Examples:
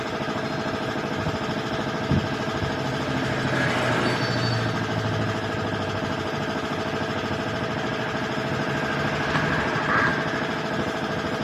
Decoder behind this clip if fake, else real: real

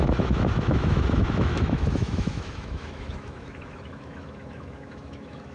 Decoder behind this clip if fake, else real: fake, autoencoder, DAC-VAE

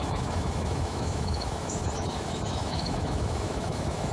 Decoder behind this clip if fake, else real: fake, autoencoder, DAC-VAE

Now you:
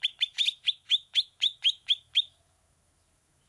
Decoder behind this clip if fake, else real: fake, autoencoder, DAC-VAE